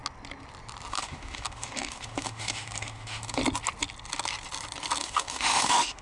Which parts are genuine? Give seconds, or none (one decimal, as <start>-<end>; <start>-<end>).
0.0-0.9; 3.4-5.0